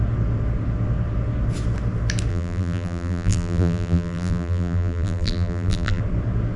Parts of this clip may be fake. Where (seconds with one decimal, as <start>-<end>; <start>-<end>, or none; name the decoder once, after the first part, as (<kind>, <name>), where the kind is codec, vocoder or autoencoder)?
2.3-6.0 (vocoder, BigVGAN v2)